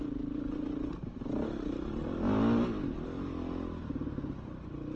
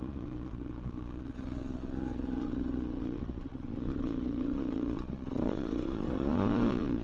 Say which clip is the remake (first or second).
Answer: second